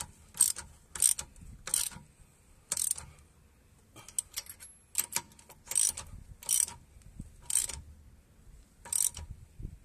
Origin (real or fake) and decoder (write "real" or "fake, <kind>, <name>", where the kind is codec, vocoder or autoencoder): real